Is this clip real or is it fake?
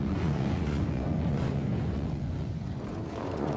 fake